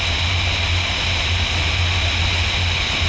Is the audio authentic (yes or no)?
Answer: yes